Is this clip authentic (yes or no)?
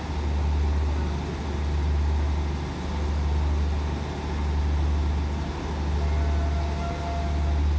yes